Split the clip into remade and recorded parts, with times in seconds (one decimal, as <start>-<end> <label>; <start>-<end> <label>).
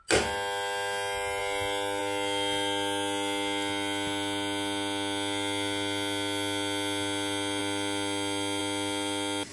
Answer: 0.0-9.5 recorded